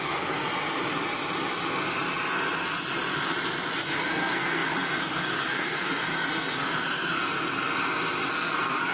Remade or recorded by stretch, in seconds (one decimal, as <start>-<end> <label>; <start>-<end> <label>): 0.0-0.5 remade; 0.5-3.8 recorded; 3.8-7.2 remade; 7.2-8.3 recorded; 8.3-8.9 remade